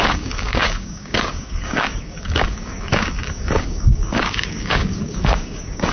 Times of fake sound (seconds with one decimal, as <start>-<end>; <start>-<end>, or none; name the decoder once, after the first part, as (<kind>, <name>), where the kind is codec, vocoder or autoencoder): 0.0-5.9 (codec, DAC)